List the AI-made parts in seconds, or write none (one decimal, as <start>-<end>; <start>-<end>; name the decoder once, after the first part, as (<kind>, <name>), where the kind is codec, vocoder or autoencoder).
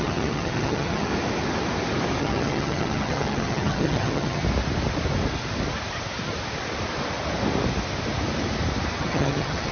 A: 0.0-1.1 (vocoder, HiFi-GAN); 2.2-4.4; 9.0-9.7